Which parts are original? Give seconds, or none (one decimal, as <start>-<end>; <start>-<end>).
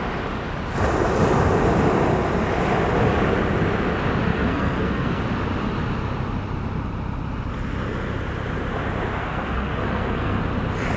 0.0-4.3; 5.2-9.2; 10.4-11.0